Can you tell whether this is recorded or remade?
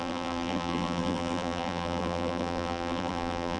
remade